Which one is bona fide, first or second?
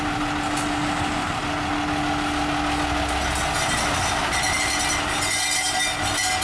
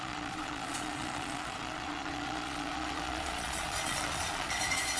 first